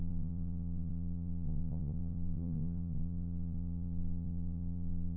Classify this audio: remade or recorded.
remade